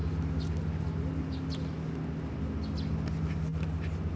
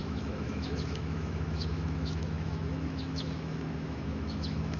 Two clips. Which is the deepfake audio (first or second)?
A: second